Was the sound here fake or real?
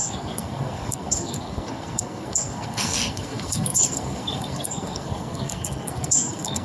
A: fake